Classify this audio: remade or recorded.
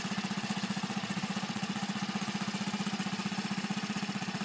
remade